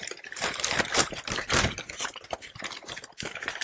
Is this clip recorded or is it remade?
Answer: remade